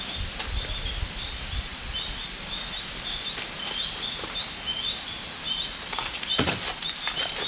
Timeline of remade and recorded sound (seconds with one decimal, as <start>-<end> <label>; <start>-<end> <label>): 0.0-6.0 recorded; 6.0-6.5 remade; 6.5-7.5 recorded